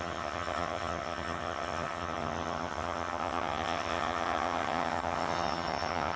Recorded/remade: remade